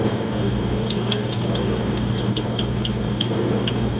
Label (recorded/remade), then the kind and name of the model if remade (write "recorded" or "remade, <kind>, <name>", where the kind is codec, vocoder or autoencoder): remade, codec, DAC